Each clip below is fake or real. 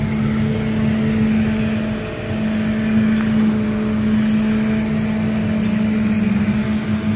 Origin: real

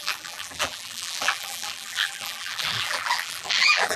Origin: fake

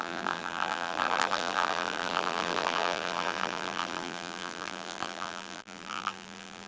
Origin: fake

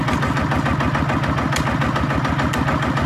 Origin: real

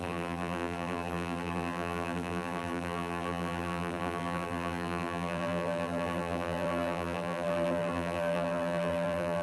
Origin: fake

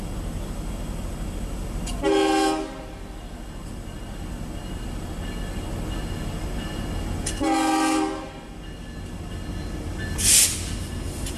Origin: real